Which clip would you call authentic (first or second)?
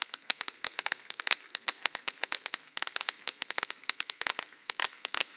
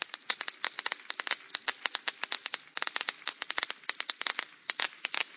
second